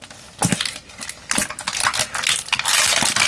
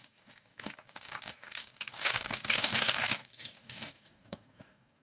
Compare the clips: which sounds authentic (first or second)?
first